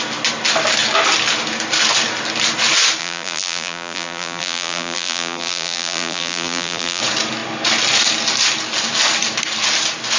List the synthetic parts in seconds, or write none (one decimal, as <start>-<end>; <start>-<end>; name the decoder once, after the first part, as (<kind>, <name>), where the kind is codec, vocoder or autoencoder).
3.0-7.0 (vocoder, BigVGAN v2)